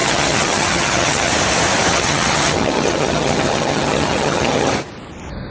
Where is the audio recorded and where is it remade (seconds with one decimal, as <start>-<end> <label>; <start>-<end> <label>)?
0.0-1.3 remade; 1.3-1.9 recorded; 1.9-4.7 remade; 4.7-5.5 recorded